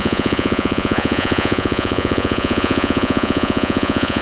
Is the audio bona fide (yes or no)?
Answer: no